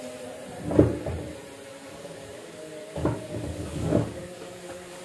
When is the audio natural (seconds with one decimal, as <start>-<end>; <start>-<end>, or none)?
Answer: 0.0-1.7